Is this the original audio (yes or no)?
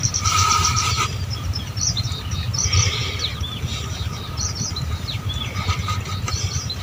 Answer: no